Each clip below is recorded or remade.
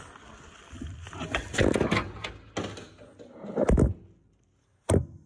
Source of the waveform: recorded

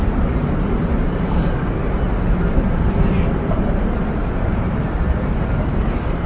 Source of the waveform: remade